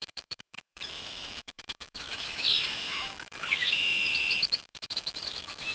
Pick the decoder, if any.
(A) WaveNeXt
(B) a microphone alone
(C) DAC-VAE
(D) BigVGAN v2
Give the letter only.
C